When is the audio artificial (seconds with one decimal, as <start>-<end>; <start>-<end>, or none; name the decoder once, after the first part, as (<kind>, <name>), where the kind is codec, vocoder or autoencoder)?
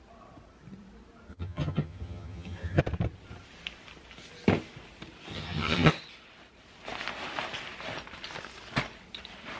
1.3-2.8 (vocoder, HiFi-GAN); 5.3-5.9